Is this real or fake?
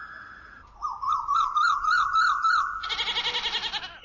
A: real